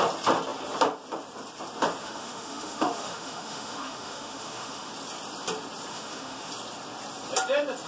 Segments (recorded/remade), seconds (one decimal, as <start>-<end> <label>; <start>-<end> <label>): 0.0-2.0 recorded; 2.0-4.9 remade; 4.9-5.9 recorded; 5.9-6.5 remade; 6.5-7.9 recorded